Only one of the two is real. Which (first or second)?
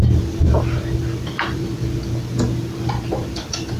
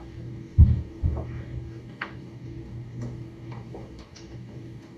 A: first